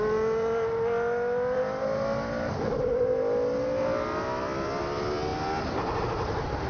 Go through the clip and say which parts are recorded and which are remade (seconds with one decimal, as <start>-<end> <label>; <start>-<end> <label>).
0.0-6.7 recorded